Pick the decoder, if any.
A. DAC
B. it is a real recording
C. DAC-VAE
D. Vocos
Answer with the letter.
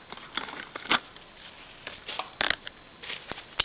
B